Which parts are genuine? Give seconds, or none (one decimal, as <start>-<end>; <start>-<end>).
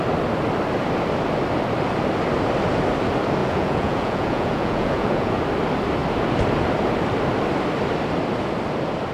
0.0-3.4; 5.4-9.1